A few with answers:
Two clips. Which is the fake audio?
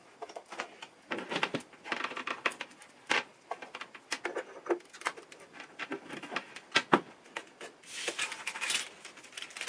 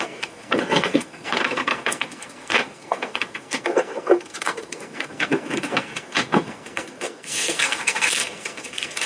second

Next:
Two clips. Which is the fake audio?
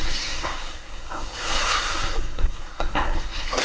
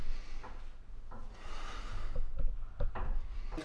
first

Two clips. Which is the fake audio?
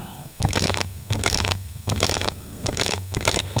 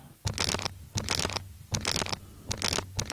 first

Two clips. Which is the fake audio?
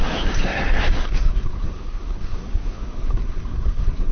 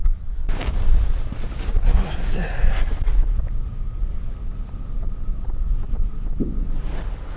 first